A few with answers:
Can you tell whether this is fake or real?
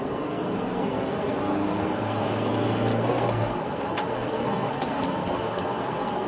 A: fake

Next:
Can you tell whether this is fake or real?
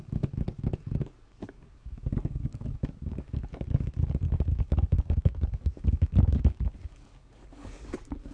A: fake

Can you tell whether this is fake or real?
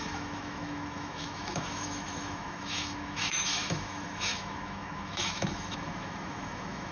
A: fake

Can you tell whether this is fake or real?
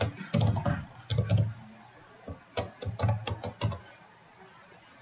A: real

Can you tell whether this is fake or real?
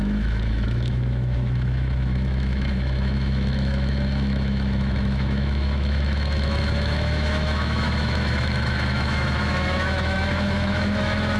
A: fake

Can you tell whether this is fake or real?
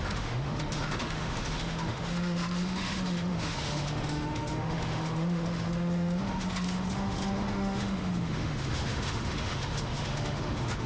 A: fake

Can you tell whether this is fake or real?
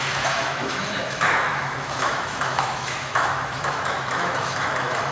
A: fake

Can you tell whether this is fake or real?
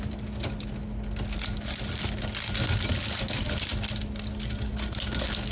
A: real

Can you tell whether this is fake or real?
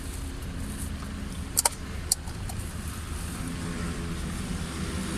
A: fake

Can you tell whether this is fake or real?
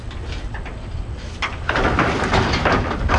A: real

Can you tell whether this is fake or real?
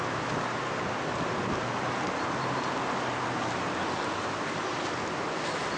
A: real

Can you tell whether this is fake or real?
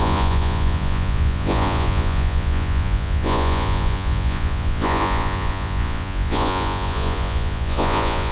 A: fake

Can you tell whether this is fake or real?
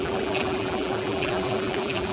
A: fake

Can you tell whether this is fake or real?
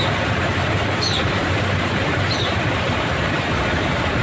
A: fake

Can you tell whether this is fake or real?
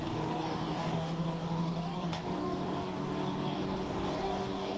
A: fake